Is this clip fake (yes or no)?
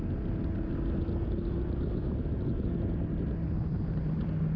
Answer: no